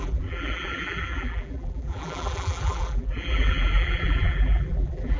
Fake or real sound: fake